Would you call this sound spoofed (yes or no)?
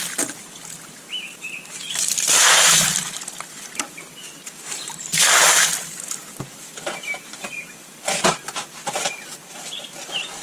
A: no